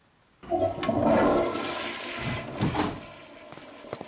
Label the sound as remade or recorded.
recorded